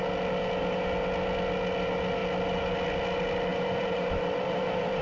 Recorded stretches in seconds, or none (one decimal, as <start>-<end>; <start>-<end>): 0.0-3.5